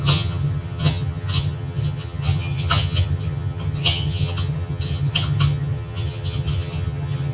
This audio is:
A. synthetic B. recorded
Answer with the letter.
A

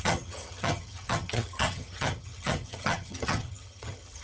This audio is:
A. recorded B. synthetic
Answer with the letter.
B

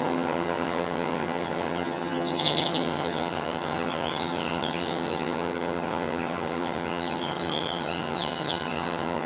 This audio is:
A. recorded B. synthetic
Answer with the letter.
B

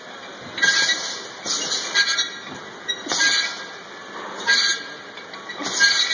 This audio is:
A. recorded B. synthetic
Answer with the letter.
A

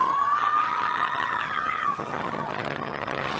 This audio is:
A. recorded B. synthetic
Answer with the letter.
B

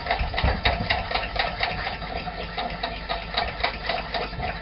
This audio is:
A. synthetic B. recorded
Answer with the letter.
B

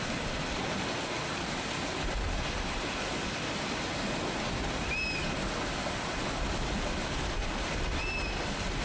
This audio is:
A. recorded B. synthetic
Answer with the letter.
A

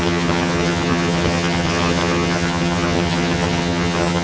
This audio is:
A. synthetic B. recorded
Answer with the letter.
A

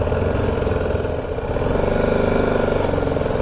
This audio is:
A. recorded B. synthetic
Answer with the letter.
A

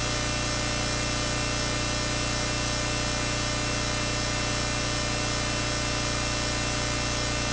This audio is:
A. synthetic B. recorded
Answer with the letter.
B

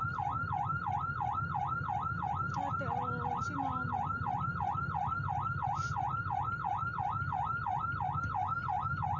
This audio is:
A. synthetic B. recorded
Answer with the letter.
B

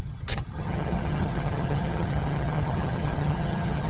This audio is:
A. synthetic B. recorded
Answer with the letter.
A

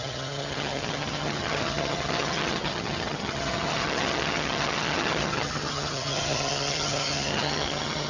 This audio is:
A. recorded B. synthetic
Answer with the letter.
B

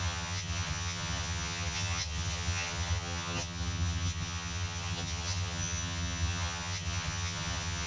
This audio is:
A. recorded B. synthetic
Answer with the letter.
B